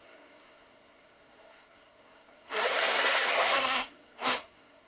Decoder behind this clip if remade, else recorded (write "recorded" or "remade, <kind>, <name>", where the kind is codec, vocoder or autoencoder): remade, codec, SNAC